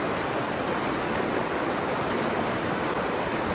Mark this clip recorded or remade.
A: recorded